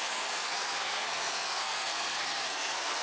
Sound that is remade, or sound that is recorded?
remade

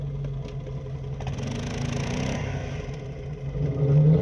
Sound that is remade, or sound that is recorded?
recorded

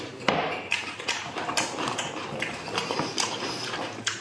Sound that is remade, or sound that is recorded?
remade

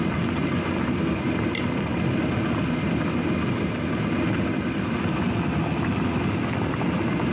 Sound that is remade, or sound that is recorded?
recorded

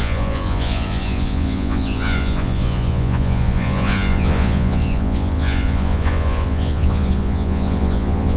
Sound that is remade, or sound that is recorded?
remade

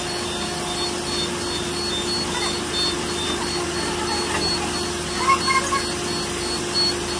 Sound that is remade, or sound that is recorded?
recorded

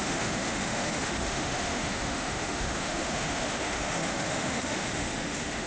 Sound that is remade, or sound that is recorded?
remade